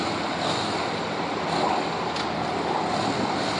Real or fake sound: real